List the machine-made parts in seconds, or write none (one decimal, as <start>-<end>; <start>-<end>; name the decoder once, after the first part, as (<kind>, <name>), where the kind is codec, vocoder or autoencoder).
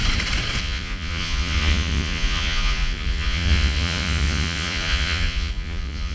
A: 0.6-6.1 (vocoder, Vocos)